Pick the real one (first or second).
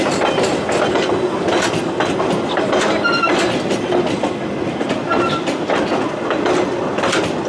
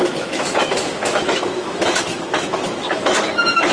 first